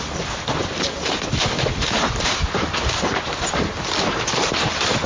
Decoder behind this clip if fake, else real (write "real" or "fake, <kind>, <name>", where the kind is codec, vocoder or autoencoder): real